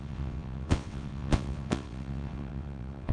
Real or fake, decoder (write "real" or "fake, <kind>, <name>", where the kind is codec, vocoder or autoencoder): fake, vocoder, WaveNeXt